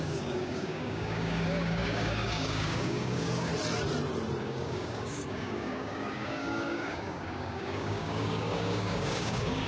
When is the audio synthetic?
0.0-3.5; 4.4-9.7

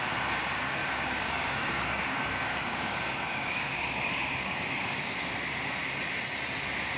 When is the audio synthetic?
0.8-5.0